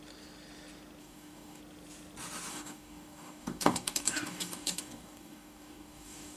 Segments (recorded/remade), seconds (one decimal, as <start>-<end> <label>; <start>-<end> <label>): 0.0-1.0 recorded; 1.0-1.6 remade; 1.6-2.5 recorded; 2.5-6.4 remade